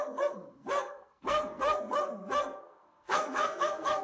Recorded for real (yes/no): no